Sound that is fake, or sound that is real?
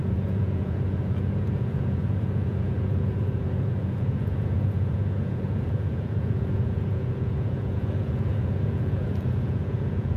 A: fake